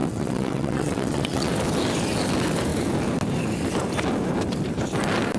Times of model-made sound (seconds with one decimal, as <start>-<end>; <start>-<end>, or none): 0.0-1.5